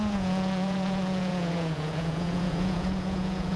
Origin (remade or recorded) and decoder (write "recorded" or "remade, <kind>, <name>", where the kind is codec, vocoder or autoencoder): remade, vocoder, Vocos